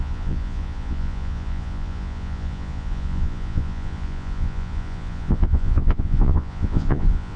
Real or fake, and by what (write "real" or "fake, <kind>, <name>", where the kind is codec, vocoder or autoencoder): fake, vocoder, Vocos